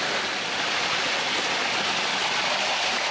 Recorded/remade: recorded